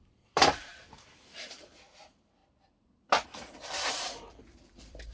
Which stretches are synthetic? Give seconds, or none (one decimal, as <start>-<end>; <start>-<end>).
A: 0.0-2.4; 3.9-5.1